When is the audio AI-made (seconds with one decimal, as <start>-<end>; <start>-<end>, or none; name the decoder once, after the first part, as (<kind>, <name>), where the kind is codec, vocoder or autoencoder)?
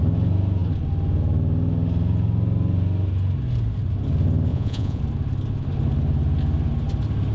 4.5-5.0 (vocoder, Vocos)